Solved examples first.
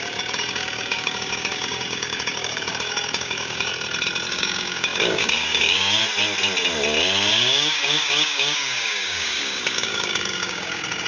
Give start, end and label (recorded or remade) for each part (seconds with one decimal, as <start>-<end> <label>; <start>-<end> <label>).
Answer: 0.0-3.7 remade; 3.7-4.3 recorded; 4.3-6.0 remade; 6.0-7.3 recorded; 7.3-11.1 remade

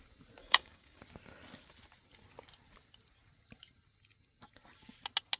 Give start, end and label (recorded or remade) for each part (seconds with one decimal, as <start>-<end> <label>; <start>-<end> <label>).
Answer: 0.0-0.4 recorded; 0.4-1.0 remade; 1.0-5.4 recorded

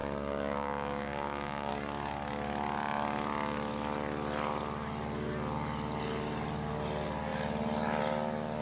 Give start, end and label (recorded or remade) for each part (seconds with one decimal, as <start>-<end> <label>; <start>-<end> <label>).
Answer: 0.0-1.7 remade; 1.7-8.6 recorded

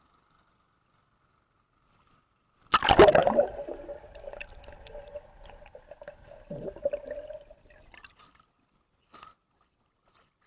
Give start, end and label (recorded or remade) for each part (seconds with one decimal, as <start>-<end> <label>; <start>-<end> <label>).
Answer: 0.0-10.5 recorded

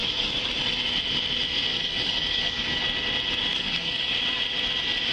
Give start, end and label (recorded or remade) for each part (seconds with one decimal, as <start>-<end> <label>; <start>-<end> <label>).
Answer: 0.0-0.5 remade; 0.5-1.7 recorded; 1.7-2.8 remade; 2.8-3.5 recorded; 3.5-4.2 remade; 4.2-5.1 recorded